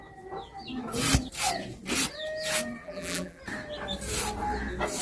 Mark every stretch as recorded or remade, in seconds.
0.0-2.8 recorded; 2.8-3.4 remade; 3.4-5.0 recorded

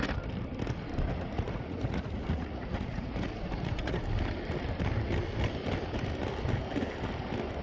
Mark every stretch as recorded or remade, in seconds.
0.0-1.1 recorded; 1.1-4.0 remade; 4.0-7.6 recorded

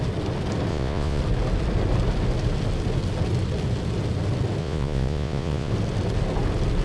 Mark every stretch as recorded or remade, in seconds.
0.0-0.7 recorded; 0.7-1.2 remade; 1.2-4.6 recorded; 4.6-5.7 remade; 5.7-6.8 recorded

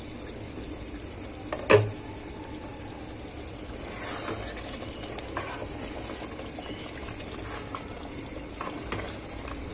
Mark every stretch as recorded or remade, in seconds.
0.0-9.7 recorded